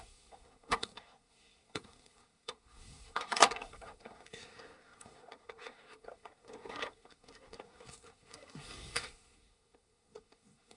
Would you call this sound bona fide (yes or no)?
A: no